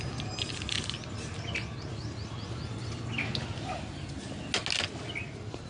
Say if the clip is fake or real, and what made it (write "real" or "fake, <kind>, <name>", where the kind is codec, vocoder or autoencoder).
real